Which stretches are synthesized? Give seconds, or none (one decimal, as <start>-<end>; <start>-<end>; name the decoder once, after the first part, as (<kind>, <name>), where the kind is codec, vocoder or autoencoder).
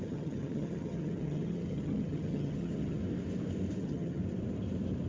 0.0-3.0 (vocoder, HiFi-GAN); 3.8-4.2